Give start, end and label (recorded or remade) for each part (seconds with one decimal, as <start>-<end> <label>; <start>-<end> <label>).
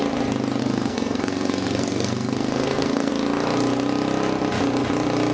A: 0.0-0.6 recorded; 0.6-3.1 remade; 3.1-5.3 recorded